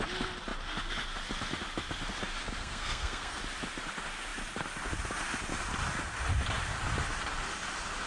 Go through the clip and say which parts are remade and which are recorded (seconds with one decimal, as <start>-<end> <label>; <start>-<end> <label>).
0.0-2.6 recorded; 2.6-3.4 remade; 3.4-8.1 recorded